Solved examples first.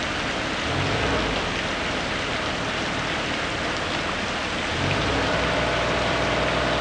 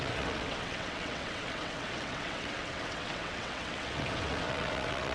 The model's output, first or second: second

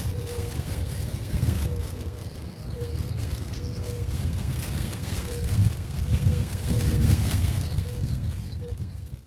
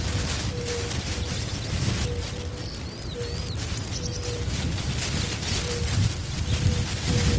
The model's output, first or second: first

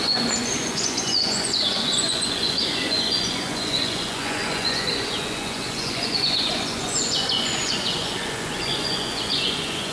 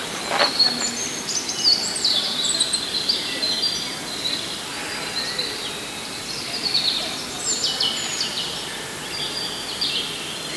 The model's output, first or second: first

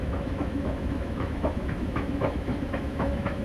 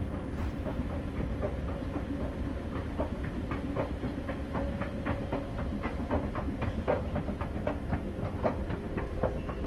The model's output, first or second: first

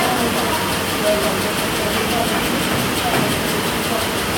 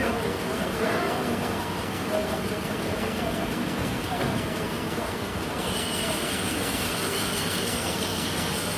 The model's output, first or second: second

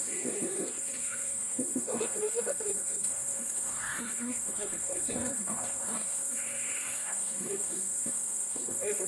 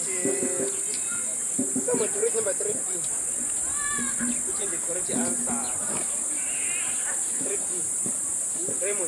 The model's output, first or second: first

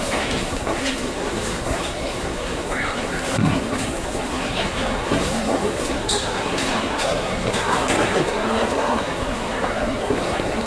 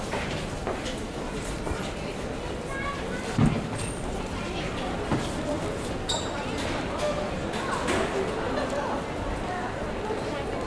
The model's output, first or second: first